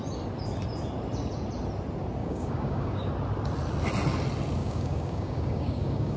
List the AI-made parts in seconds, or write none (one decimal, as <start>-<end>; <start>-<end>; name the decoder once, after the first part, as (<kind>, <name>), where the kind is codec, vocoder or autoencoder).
2.2-3.1 (codec, DAC); 4.6-6.2